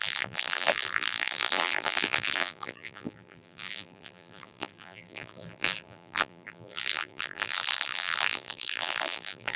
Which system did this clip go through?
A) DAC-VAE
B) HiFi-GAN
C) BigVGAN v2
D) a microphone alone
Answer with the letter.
C